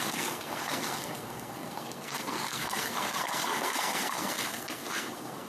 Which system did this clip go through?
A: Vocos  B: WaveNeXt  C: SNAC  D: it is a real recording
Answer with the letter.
C